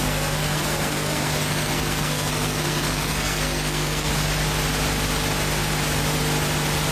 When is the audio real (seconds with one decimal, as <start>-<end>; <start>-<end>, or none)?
4.1-6.9